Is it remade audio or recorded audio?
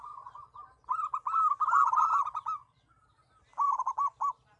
recorded